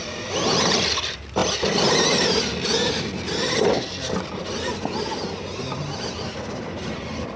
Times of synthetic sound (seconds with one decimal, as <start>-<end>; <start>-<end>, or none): none